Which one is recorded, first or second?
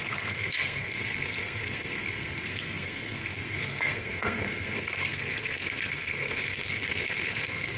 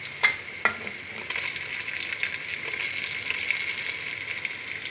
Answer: second